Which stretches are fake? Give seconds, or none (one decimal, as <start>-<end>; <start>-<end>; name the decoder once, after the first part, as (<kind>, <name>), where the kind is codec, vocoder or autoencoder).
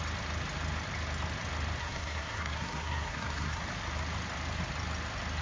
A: 1.8-3.6 (codec, SNAC)